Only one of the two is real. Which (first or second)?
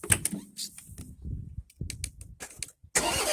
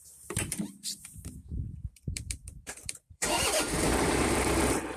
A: first